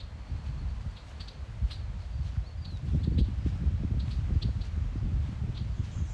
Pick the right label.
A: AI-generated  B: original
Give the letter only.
B